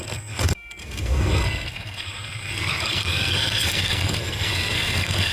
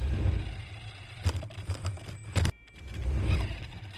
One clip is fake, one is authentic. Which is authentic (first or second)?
second